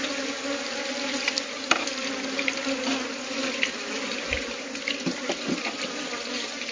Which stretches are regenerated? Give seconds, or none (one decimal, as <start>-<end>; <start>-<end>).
none